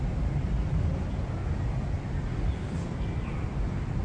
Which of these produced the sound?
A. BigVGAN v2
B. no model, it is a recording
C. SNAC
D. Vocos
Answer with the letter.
B